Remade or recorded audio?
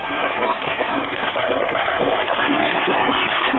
remade